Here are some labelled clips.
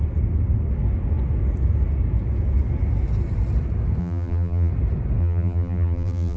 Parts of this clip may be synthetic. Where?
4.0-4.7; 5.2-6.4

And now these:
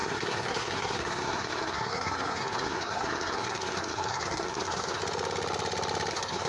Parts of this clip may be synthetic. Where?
0.0-5.0; 6.1-6.5

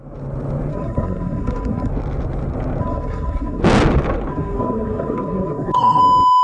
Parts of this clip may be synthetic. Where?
0.7-1.9; 2.8-3.6; 4.3-6.0

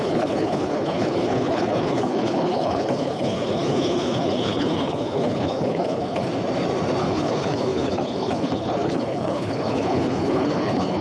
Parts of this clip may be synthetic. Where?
0.0-6.3; 7.0-11.0

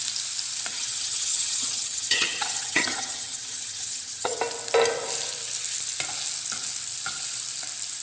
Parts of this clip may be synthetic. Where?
0.7-4.4